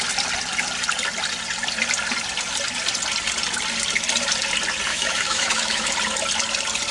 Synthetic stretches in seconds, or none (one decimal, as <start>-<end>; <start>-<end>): 4.9-5.9